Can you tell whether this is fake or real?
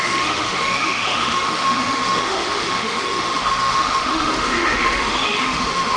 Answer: fake